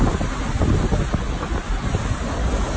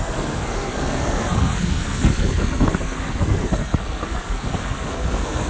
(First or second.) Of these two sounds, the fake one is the second